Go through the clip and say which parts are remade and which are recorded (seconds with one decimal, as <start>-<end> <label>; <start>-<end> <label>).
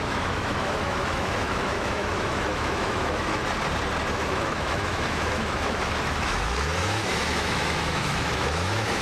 0.0-3.4 remade; 3.4-4.1 recorded; 4.1-9.0 remade